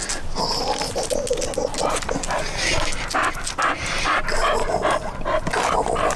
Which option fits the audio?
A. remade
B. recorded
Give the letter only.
B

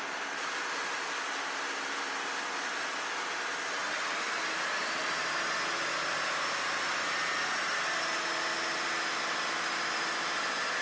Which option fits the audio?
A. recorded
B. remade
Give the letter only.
A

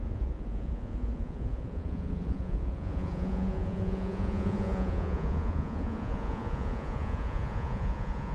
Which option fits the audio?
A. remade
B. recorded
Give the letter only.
A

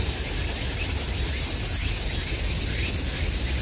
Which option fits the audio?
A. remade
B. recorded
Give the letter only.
B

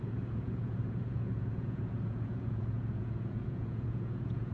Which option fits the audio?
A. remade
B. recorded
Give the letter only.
A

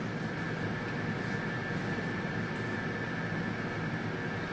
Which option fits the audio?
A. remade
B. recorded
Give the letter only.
B